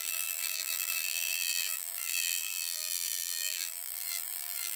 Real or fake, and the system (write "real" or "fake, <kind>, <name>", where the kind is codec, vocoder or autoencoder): fake, vocoder, BigVGAN v2